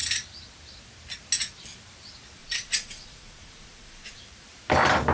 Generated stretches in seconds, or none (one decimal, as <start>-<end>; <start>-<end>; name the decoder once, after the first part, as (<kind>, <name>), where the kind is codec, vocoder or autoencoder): 2.4-4.2 (vocoder, Vocos)